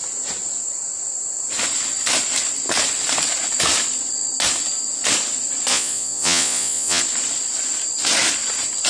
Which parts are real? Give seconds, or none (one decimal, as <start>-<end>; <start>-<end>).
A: 0.0-5.7; 7.0-8.9